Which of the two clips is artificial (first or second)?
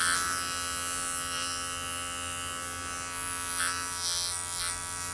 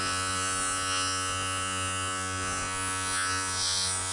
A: second